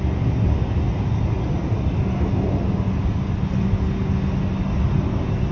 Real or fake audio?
real